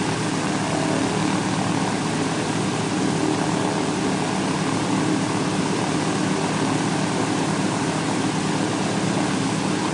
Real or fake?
real